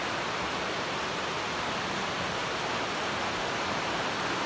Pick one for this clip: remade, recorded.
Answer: recorded